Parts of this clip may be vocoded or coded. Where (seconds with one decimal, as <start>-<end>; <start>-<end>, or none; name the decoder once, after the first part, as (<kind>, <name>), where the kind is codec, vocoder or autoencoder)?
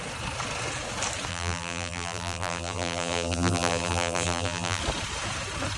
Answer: 1.3-4.8 (vocoder, BigVGAN v2)